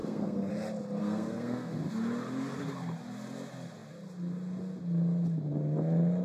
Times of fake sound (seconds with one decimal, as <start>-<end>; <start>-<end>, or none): 0.0-0.5; 1.0-1.8